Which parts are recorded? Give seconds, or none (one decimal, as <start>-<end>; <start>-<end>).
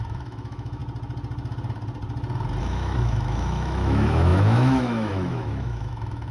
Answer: 0.8-2.6